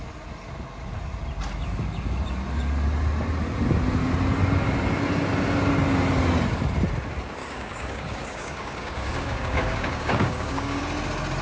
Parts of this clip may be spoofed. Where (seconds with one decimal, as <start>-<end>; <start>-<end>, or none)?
7.4-10.8

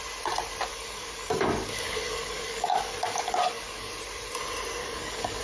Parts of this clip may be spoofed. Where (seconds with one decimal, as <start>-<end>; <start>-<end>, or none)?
0.7-3.9; 4.8-5.4